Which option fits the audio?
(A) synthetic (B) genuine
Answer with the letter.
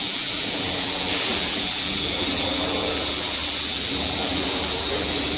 A